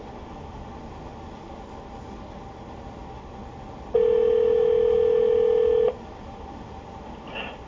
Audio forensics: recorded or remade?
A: recorded